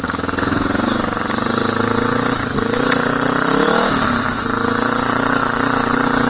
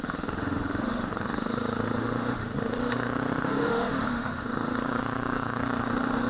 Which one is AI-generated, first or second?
second